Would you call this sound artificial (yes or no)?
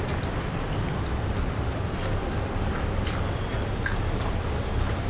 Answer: yes